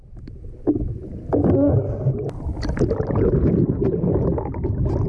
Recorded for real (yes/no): yes